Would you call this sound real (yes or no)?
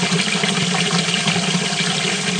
yes